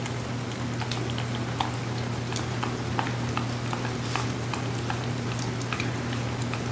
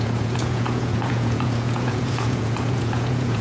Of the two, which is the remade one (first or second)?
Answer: second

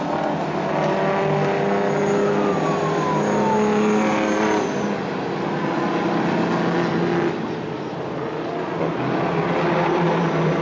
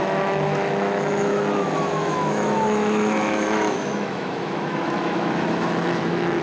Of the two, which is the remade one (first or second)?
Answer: second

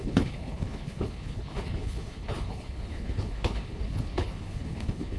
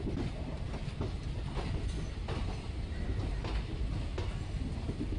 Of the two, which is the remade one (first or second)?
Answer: first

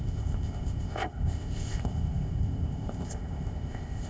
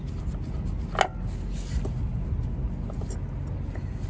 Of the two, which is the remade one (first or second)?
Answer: first